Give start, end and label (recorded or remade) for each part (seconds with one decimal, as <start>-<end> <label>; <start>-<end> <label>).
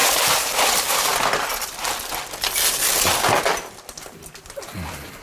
0.0-0.7 remade; 0.7-5.2 recorded